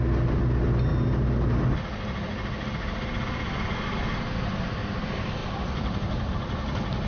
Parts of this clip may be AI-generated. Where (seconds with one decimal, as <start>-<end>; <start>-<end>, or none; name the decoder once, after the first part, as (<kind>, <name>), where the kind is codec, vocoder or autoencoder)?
5.4-6.3 (vocoder, BigVGAN v2)

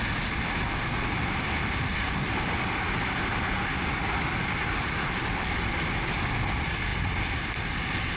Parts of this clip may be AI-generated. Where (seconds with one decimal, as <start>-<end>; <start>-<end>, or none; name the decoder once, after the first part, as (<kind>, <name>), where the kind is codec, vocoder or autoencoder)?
none

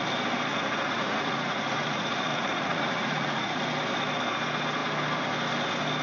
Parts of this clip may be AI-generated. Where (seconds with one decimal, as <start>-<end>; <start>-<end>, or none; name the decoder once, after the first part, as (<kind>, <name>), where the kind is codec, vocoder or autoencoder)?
0.5-3.6 (vocoder, Vocos)

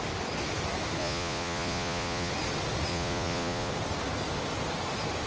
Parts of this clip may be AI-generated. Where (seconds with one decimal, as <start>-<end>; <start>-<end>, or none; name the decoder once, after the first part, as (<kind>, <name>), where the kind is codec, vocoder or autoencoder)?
1.0-2.3 (vocoder, Vocos); 2.9-3.7